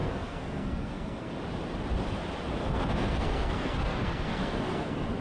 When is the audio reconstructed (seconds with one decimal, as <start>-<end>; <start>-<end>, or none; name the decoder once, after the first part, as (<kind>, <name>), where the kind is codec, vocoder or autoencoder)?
0.0-1.3 (codec, SNAC); 2.6-5.2